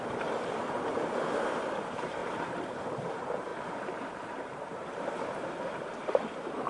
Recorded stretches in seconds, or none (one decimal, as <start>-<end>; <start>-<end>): 2.2-3.0